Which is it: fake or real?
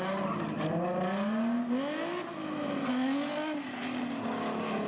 real